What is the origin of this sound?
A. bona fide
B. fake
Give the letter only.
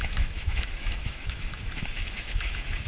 B